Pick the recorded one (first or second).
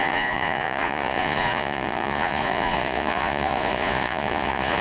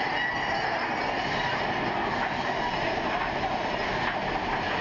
second